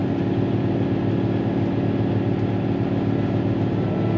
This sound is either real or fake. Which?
real